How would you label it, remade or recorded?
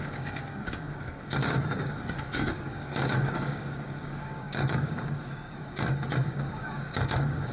remade